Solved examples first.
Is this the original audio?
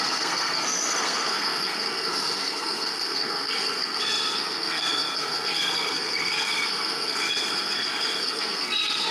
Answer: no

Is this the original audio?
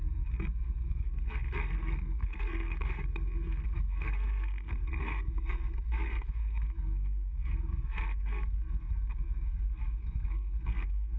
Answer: no